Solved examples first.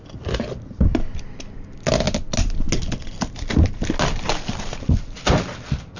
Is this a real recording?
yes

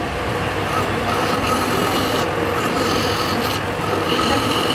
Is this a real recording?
yes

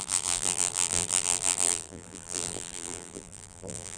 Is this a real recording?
no